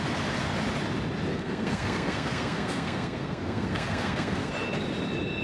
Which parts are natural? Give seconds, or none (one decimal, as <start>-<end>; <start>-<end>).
0.0-1.3; 4.5-5.4